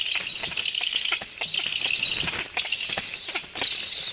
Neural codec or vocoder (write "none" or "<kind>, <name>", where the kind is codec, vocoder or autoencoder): none